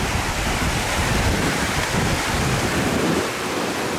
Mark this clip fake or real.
real